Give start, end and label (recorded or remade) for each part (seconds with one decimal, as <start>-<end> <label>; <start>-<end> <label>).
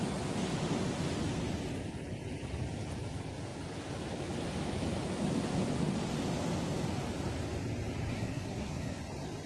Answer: 0.0-8.1 recorded; 8.1-9.0 remade; 9.0-9.5 recorded